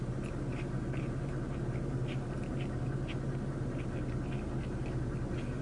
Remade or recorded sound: recorded